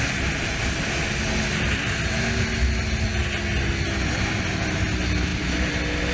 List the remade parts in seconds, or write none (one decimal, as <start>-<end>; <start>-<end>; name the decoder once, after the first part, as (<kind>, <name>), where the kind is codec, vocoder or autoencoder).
none